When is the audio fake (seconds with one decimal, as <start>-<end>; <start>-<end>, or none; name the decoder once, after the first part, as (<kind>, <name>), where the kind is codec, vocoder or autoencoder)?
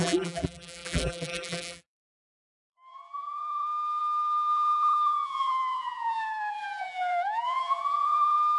0.0-8.6 (vocoder, BigVGAN v2)